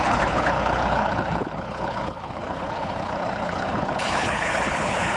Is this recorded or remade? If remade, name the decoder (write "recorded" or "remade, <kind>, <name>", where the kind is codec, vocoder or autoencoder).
remade, codec, HILCodec